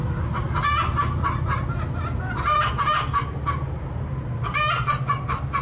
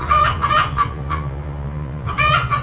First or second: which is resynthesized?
second